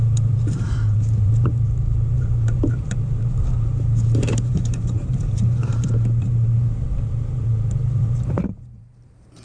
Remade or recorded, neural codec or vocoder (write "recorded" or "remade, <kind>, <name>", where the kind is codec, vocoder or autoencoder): remade, vocoder, BigVGAN v2